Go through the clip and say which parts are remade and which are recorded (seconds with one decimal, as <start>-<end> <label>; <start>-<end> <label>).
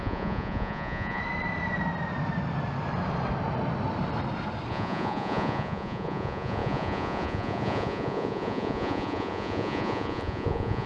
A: 0.0-1.2 remade; 1.2-4.7 recorded; 4.7-10.9 remade